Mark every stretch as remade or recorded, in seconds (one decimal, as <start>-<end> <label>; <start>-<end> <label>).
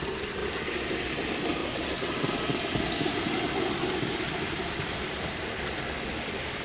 0.0-0.4 remade; 0.4-0.9 recorded; 0.9-6.6 remade